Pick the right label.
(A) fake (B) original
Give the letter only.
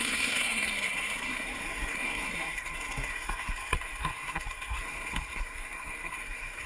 A